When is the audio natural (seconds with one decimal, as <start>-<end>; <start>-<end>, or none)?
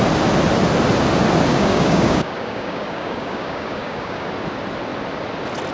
0.0-1.5; 4.3-5.7